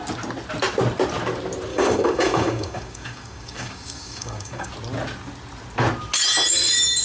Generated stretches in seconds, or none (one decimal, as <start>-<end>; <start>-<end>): 1.7-4.7